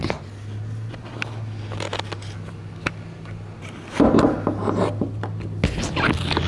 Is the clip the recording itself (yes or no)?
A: yes